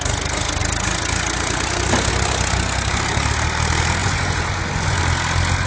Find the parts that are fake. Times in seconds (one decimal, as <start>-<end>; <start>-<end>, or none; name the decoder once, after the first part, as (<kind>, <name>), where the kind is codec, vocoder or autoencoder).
4.0-5.0 (vocoder, Vocos)